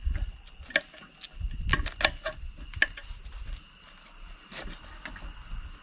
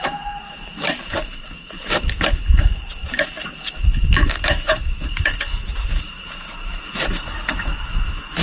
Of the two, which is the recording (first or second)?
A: first